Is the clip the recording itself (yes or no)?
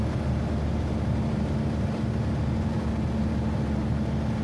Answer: yes